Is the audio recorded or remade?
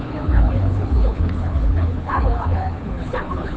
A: remade